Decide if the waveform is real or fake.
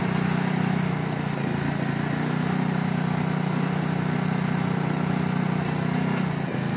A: real